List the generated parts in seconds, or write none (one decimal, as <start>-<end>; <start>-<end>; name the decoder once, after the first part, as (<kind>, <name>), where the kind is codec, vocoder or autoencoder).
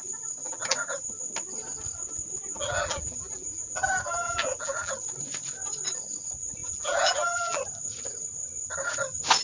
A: 0.4-1.0 (vocoder, BigVGAN v2); 2.5-4.9; 6.6-7.6